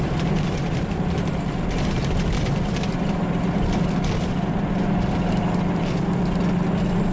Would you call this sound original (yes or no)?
yes